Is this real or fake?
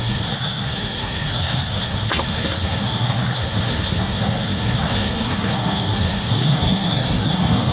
fake